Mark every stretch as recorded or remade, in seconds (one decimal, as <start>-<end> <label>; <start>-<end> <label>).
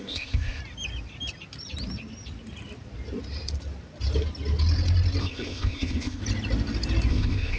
0.0-0.6 remade; 0.6-5.2 recorded; 5.2-6.2 remade; 6.2-7.1 recorded; 7.1-7.6 remade